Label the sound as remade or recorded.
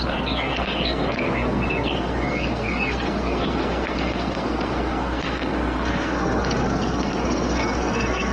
remade